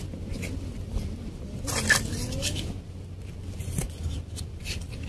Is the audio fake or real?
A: real